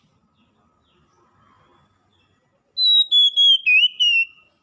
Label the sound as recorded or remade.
recorded